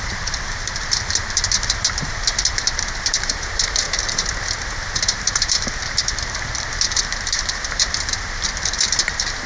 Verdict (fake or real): fake